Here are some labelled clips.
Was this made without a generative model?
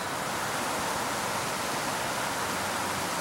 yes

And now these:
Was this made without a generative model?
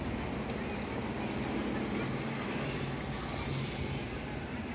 yes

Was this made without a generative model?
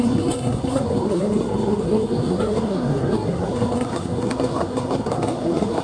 no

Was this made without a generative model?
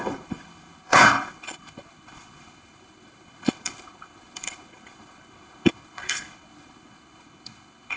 no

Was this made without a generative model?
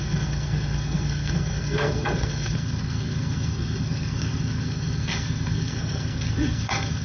no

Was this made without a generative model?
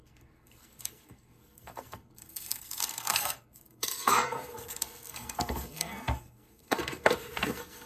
no